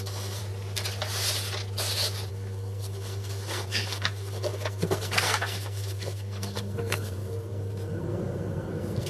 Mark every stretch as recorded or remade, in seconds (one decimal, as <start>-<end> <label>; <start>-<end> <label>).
0.0-0.4 remade; 0.4-2.3 recorded; 2.3-9.1 remade